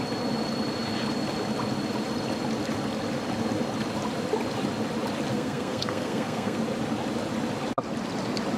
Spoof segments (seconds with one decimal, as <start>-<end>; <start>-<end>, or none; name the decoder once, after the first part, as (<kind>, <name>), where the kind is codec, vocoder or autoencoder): 5.3-6.6 (codec, SNAC)